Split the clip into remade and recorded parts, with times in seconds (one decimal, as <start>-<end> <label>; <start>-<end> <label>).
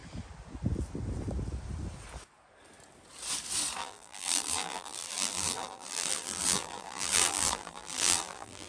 0.0-3.8 recorded; 3.8-8.7 remade